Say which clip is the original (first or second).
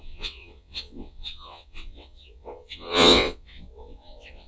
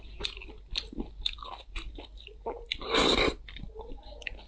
second